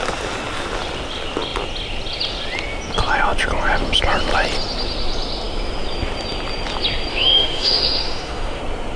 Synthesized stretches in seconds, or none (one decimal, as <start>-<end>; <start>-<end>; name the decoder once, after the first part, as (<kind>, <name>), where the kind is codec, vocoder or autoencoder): 7.1-8.6 (autoencoder, DAC-VAE)